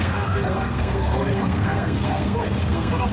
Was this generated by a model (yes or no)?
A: yes